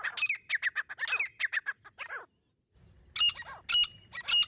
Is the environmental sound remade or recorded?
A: recorded